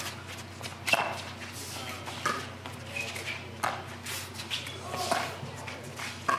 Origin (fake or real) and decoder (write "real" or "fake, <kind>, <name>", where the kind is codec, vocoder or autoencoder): real